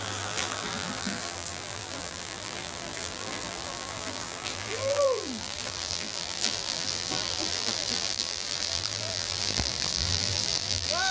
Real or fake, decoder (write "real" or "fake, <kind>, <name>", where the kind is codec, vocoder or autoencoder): fake, vocoder, BigVGAN v2